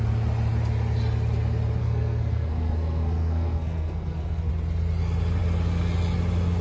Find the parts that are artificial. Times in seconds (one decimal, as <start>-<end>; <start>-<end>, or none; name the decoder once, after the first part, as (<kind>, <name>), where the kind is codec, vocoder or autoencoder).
1.8-4.5 (codec, SNAC)